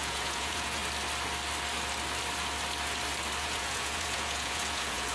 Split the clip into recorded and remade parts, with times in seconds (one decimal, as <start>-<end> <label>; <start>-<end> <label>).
0.0-0.8 remade; 0.8-3.4 recorded; 3.4-5.1 remade

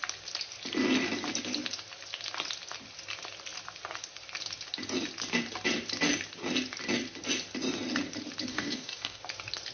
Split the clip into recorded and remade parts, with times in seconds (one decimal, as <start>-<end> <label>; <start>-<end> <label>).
0.0-8.5 recorded; 8.5-9.2 remade; 9.2-9.7 recorded